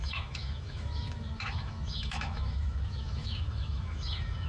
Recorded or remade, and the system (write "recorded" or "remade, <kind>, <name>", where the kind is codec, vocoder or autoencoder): remade, autoencoder, DAC-VAE